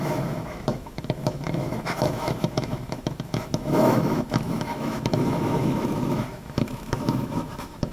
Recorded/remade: remade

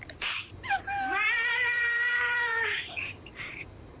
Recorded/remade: remade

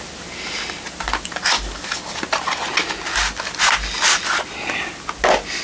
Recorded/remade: recorded